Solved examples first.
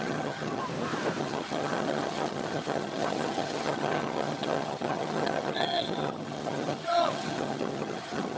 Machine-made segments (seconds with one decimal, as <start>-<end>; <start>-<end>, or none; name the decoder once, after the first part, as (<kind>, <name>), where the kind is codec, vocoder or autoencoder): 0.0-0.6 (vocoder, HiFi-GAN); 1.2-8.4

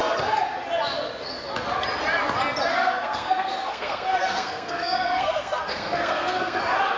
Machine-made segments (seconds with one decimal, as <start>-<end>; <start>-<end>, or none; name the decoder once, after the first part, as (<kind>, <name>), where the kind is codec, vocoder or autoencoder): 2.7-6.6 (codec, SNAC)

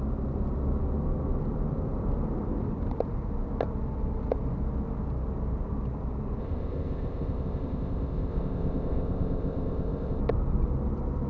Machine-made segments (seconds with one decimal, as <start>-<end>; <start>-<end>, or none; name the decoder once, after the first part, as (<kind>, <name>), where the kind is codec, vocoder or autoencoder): 6.4-10.2 (codec, ZipCodec)

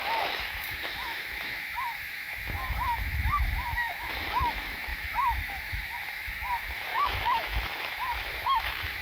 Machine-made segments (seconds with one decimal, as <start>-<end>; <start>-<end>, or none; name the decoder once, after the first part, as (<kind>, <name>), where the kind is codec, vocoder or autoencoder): 0.0-9.0 (autoencoder, DAC-VAE)